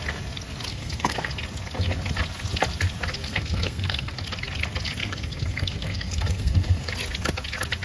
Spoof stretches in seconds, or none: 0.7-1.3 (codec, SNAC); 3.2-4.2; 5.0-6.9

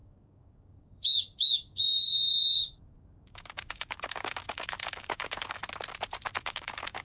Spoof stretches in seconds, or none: 0.0-5.6 (codec, DAC); 6.4-7.0

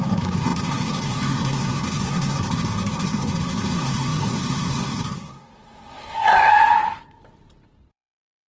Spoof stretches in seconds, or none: 0.0-6.5 (codec, SNAC); 7.9-8.5